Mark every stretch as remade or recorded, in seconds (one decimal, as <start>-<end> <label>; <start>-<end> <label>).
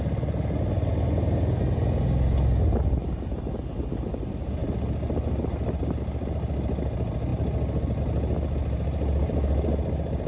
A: 0.0-10.3 recorded